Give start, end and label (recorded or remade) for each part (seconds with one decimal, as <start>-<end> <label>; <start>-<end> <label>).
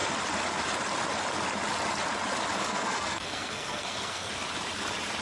0.0-2.6 recorded; 2.6-4.3 remade; 4.3-5.2 recorded